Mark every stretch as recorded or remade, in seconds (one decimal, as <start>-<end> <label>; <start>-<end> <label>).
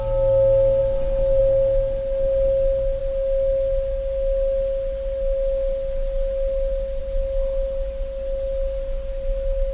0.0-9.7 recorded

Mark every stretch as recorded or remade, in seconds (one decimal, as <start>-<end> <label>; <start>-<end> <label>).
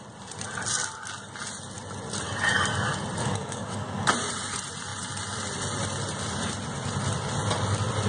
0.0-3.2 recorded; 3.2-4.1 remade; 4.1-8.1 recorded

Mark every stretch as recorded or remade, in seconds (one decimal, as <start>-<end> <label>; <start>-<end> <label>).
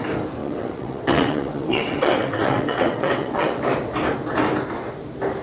0.0-0.4 recorded; 0.4-3.6 remade; 3.6-5.4 recorded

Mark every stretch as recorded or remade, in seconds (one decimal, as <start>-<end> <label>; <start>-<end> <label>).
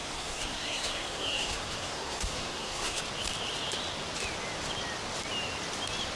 0.0-3.0 remade; 3.0-6.2 recorded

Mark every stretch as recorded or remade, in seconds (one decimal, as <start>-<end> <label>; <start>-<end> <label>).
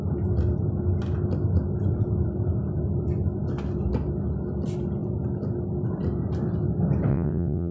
0.0-7.1 recorded; 7.1-7.7 remade